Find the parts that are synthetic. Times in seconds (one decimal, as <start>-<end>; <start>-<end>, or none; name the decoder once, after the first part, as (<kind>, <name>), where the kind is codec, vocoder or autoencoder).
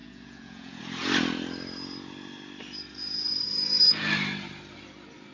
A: 0.0-0.8 (vocoder, Vocos)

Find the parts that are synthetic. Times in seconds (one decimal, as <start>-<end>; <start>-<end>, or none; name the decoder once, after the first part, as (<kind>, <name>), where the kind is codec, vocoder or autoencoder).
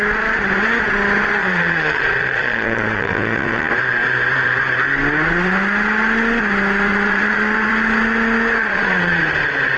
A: 1.4-3.7 (vocoder, Vocos); 6.9-7.7; 8.6-9.2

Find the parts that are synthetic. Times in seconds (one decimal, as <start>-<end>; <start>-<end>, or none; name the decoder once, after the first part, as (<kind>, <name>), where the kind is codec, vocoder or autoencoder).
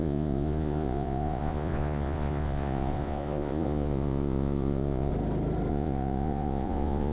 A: 0.0-5.1 (vocoder, Vocos); 5.7-7.1